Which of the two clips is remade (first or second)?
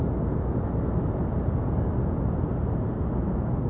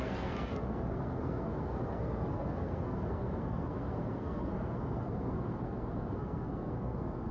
second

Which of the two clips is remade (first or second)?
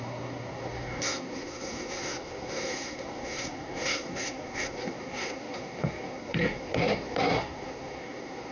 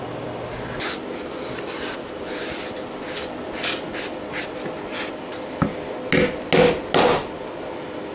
first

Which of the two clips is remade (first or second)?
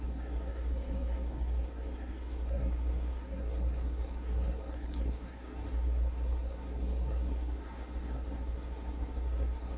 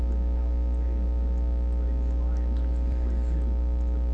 first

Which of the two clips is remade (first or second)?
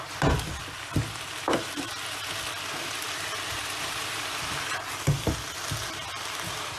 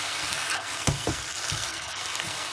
second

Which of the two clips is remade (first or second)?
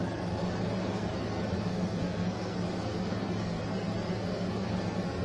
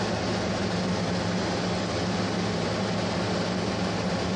first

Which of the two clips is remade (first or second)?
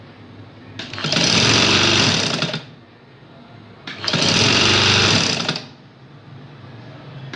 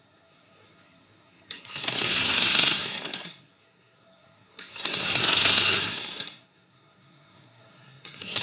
second